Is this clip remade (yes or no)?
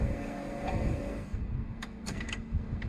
yes